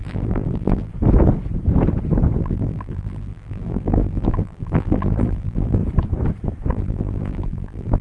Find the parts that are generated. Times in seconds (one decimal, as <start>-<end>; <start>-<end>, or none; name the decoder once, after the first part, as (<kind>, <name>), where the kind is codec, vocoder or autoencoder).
0.0-0.9 (vocoder, BigVGAN v2); 2.4-5.8; 6.7-8.0